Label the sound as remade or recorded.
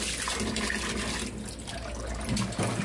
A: recorded